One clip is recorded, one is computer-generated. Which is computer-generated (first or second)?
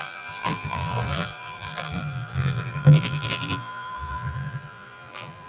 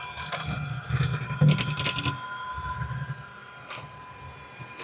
first